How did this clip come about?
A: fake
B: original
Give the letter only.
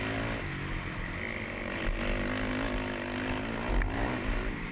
B